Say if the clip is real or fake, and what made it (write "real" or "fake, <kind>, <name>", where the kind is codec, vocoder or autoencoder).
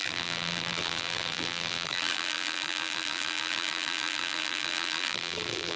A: fake, vocoder, BigVGAN v2